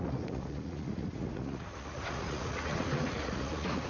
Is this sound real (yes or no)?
no